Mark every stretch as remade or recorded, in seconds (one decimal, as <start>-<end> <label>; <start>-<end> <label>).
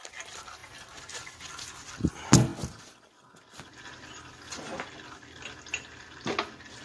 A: 0.0-6.8 recorded